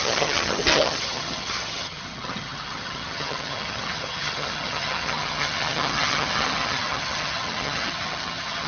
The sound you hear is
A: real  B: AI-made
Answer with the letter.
B